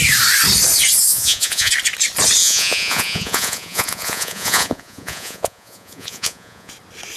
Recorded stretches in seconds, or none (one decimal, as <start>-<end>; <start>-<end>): 0.0-1.1; 1.7-2.4; 6.7-7.2